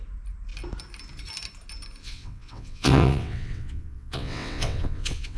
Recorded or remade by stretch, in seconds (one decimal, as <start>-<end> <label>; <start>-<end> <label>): 0.0-2.0 recorded; 2.0-5.4 remade